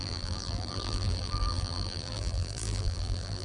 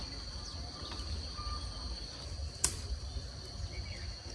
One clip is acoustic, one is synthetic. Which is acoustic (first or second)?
second